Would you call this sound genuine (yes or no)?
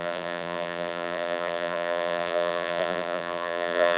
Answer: no